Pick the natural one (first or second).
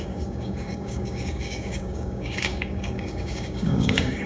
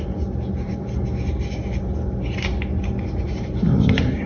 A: second